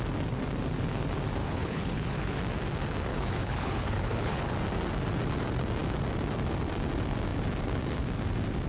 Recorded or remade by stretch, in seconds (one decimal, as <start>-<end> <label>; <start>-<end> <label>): 0.0-1.4 recorded; 1.4-2.4 remade; 2.4-3.1 recorded; 3.1-4.5 remade; 4.5-8.7 recorded